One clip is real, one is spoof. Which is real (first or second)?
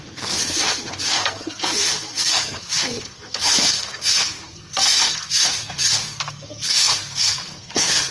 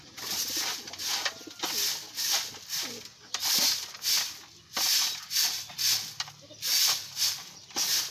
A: second